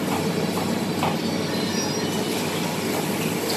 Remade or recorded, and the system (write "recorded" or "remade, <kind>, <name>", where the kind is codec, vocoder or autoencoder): recorded